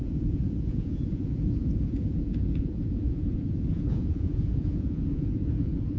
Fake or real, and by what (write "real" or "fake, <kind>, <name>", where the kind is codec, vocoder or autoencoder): fake, vocoder, Vocos